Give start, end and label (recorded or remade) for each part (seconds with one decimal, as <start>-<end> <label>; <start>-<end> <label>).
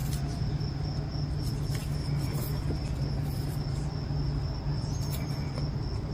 0.0-6.1 recorded